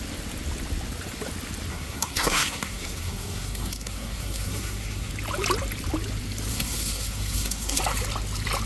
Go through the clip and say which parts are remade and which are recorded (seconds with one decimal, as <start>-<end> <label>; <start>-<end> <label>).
0.0-1.7 recorded; 1.7-5.1 remade; 5.1-6.5 recorded; 6.5-7.8 remade; 7.8-8.7 recorded